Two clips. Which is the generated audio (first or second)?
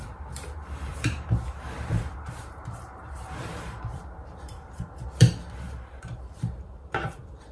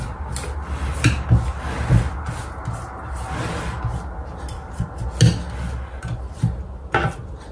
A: first